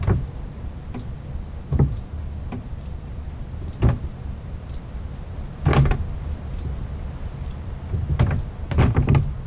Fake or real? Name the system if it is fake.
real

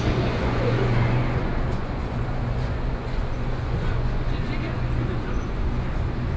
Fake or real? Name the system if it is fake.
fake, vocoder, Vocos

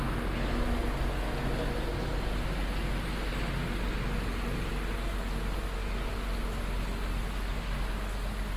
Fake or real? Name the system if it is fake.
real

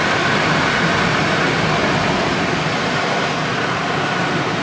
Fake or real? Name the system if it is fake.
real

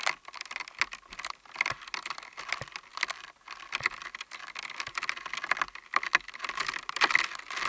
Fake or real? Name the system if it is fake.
real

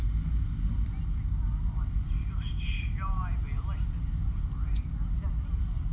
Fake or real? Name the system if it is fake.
real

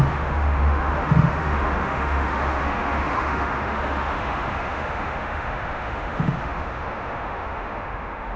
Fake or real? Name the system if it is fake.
fake, autoencoder, DAC-VAE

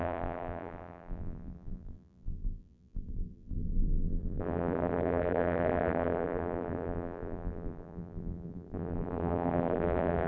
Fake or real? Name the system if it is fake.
fake, vocoder, BigVGAN v2